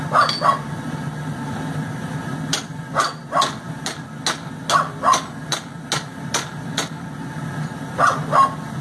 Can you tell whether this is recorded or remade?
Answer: recorded